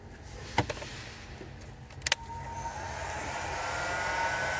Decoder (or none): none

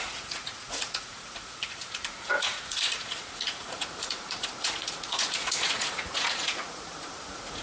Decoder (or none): vocoder, Vocos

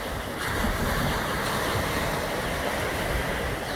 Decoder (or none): none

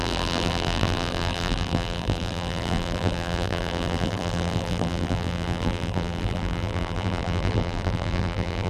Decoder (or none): vocoder, BigVGAN v2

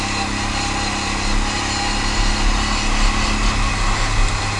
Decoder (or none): none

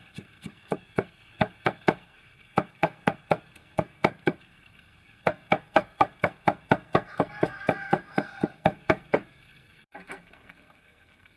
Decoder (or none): codec, SNAC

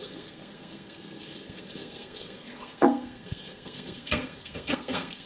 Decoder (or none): codec, SNAC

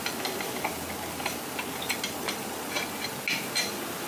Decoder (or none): none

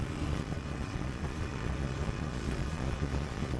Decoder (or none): vocoder, Vocos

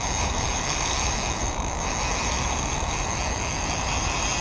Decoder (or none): vocoder, BigVGAN v2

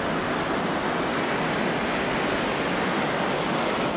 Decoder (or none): none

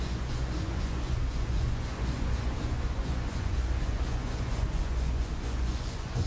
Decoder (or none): vocoder, Vocos